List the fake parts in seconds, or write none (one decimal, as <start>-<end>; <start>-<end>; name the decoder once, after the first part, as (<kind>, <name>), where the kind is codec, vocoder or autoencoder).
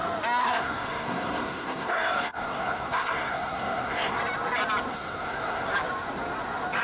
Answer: 0.4-4.2 (codec, SNAC); 4.9-5.7